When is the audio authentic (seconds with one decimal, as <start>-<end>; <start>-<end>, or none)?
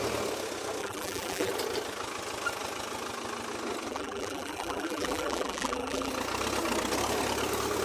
0.0-0.8; 1.5-3.9; 6.1-7.8